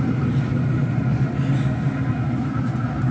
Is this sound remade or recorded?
recorded